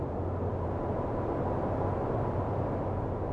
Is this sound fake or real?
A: real